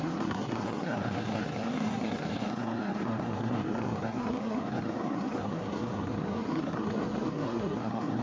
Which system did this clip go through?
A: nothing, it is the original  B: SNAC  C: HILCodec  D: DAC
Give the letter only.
B